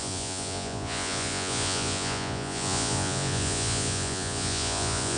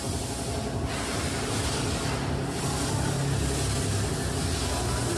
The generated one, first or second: first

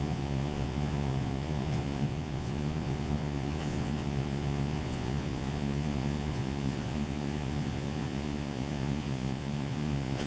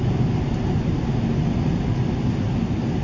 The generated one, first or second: first